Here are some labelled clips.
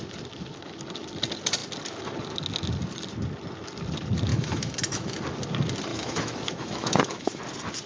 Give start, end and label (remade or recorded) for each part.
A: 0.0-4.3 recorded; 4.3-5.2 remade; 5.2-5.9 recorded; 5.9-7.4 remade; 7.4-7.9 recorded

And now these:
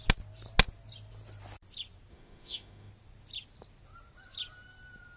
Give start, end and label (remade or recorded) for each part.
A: 0.0-2.1 recorded; 2.1-2.9 remade; 2.9-5.2 recorded

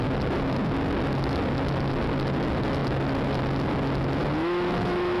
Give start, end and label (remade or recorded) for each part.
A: 0.0-4.2 recorded; 4.2-5.2 remade

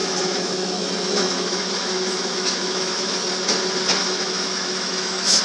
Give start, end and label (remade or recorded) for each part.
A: 0.0-3.2 remade; 3.2-4.0 recorded; 4.0-5.4 remade

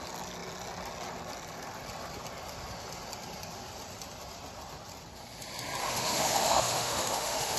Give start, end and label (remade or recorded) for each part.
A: 0.0-5.8 recorded; 5.8-7.6 remade

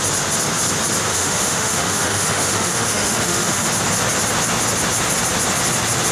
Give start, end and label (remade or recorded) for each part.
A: 0.0-1.1 recorded; 1.1-3.7 remade; 3.7-6.1 recorded